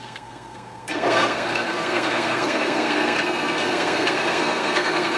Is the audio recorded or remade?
remade